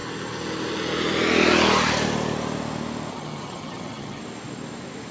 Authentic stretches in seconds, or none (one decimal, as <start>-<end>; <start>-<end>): 0.0-3.1; 4.2-5.1